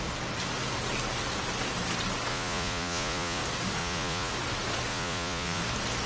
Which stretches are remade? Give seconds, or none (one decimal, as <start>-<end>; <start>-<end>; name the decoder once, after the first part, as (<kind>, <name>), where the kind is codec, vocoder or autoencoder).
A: 2.3-3.4 (vocoder, Vocos); 3.8-4.3; 4.9-5.6